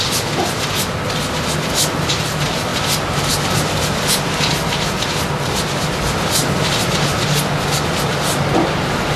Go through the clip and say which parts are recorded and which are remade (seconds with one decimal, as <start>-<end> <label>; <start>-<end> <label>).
0.0-9.2 recorded